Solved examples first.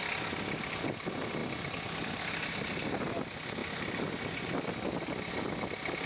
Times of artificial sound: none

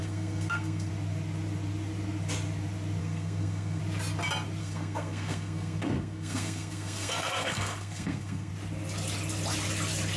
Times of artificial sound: 0.0-0.9 (codec, SNAC); 3.0-3.8; 4.6-8.5